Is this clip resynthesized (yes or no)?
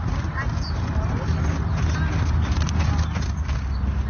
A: no